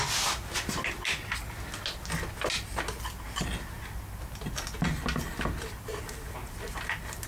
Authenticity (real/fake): real